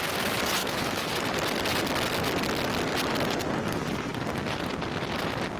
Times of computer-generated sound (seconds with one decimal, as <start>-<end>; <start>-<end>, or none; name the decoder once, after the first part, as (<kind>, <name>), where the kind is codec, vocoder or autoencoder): 0.6-1.2 (autoencoder, DAC-VAE)